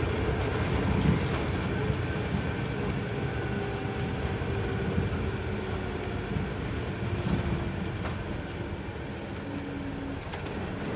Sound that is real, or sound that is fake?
real